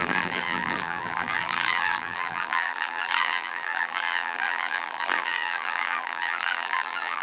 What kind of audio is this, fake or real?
fake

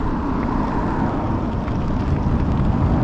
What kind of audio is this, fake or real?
real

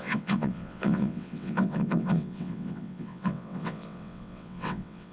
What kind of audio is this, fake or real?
fake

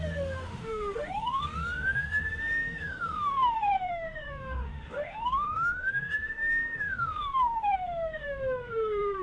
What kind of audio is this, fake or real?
fake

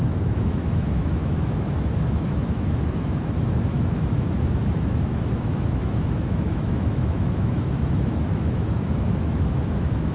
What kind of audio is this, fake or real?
fake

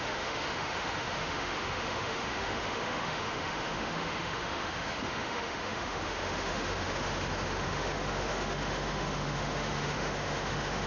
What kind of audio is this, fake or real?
fake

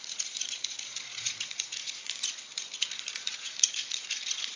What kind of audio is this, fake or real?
fake